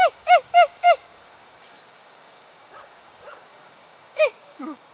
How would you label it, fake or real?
fake